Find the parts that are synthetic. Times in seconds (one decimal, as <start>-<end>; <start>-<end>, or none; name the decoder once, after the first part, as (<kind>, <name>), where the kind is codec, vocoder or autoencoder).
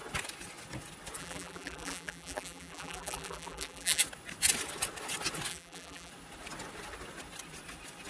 1.2-4.0 (vocoder, BigVGAN v2); 5.5-6.1